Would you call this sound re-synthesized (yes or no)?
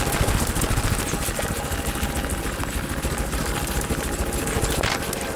no